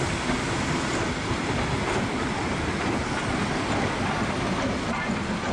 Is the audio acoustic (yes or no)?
no